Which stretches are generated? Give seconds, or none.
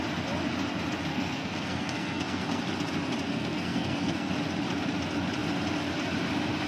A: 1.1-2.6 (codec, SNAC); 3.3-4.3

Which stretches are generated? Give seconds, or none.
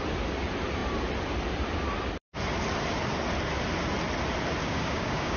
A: 4.6-5.4 (codec, DAC)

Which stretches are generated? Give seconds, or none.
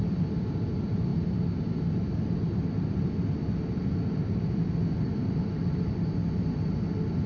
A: none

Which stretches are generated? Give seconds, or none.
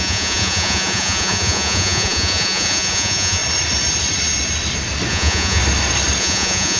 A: 0.0-3.4 (vocoder, Vocos); 5.1-5.6; 6.2-6.8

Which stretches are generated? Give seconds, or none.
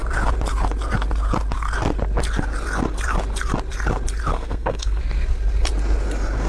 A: 4.3-5.0 (codec, SNAC)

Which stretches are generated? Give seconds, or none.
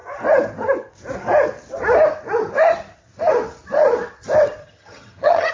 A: 4.6-5.5 (vocoder, HiFi-GAN)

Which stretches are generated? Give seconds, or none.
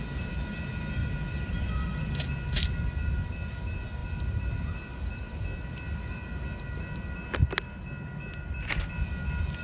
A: none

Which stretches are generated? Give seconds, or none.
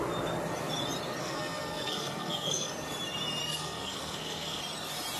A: 1.2-2.7 (codec, SNAC); 3.4-4.6